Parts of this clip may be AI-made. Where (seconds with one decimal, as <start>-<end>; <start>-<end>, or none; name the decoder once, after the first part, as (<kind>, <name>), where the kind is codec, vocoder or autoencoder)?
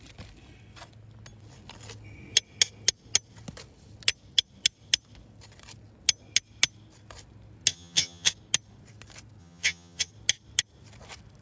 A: 7.7-8.3 (vocoder, HiFi-GAN); 9.4-10.1